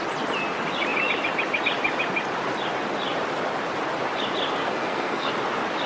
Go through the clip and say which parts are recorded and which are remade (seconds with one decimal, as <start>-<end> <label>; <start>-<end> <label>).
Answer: 0.0-4.6 recorded; 4.6-5.3 remade; 5.3-5.9 recorded